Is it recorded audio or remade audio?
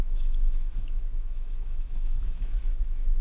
remade